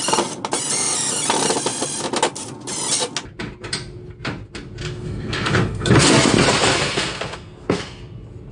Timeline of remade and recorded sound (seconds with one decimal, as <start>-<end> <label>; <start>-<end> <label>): 0.0-4.8 recorded; 4.8-5.9 remade; 5.9-6.7 recorded; 6.7-8.0 remade; 8.0-8.5 recorded